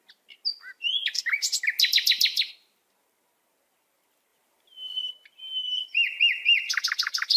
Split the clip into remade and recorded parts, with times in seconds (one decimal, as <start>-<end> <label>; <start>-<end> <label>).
0.0-7.4 recorded